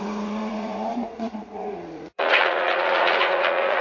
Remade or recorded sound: remade